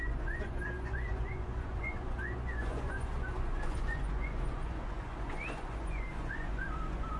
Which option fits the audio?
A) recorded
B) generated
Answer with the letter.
B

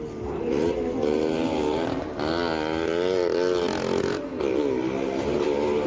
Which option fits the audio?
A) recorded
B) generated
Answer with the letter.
A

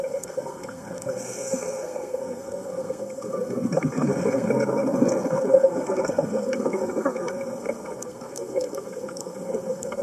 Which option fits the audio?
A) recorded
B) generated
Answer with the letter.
B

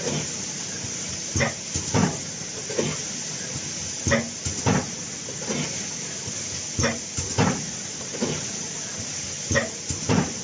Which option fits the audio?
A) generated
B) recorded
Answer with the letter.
B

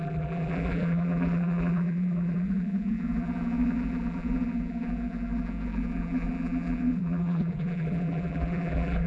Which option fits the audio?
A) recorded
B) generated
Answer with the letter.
B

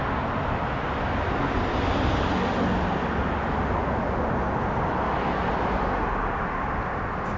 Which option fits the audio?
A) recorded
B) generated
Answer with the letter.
A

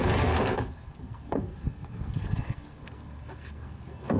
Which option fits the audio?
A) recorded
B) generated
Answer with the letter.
B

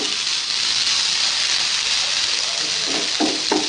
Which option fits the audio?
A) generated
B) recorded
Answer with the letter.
B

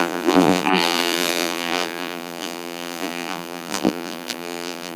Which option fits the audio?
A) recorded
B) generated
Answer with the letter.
B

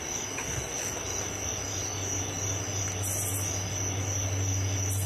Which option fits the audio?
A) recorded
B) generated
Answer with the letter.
A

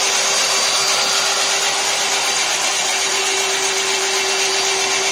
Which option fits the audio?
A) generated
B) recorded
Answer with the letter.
B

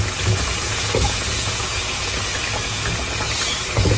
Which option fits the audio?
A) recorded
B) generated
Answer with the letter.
B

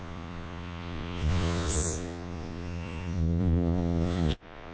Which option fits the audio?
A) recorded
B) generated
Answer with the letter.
B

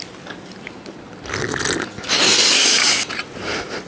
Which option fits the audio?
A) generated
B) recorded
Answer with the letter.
B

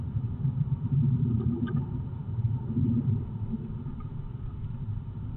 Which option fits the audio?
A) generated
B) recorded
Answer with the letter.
B